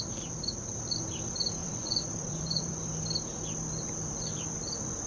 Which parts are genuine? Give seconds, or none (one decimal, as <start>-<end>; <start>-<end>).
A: 0.0-1.6; 2.8-5.1